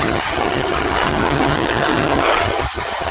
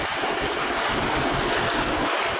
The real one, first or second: second